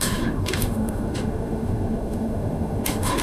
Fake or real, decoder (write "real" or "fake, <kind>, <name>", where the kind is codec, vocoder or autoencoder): fake, autoencoder, DAC-VAE